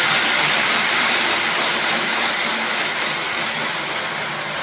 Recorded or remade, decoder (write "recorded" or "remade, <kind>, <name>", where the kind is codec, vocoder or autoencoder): recorded